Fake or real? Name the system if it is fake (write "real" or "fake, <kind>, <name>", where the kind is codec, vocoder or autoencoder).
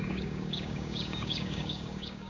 fake, codec, DAC